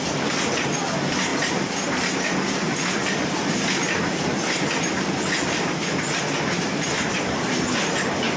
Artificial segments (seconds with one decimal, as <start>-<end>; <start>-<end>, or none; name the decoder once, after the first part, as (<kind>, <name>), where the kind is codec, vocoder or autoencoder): none